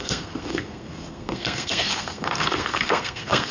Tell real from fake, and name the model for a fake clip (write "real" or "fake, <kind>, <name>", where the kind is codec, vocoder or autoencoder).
fake, codec, SNAC